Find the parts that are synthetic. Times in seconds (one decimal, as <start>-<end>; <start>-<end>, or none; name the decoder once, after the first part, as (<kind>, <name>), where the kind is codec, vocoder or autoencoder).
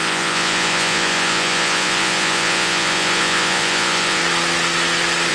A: 0.0-4.2 (vocoder, Vocos)